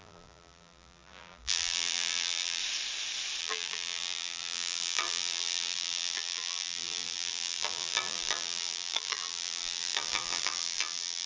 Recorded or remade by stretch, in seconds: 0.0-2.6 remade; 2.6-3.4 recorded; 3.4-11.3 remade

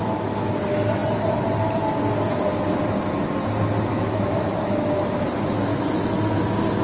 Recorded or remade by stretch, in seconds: 0.0-3.9 recorded; 3.9-5.2 remade; 5.2-6.8 recorded

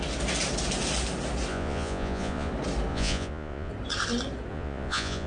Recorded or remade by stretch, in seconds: 0.0-1.5 recorded; 1.5-2.5 remade; 2.5-2.9 recorded; 2.9-3.7 remade; 3.7-4.5 recorded; 4.5-5.3 remade

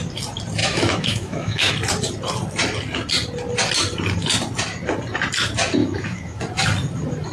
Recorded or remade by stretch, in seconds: 0.0-0.6 recorded; 0.6-1.7 remade; 1.7-5.8 recorded; 5.8-6.4 remade; 6.4-7.3 recorded

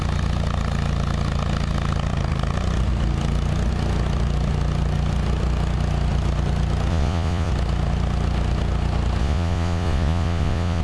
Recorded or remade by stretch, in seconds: 0.0-6.9 recorded; 6.9-7.5 remade; 7.5-9.2 recorded; 9.2-10.8 remade

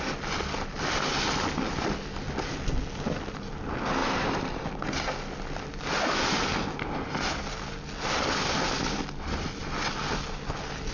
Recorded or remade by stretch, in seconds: 0.0-4.0 recorded; 4.0-4.8 remade; 4.8-10.9 recorded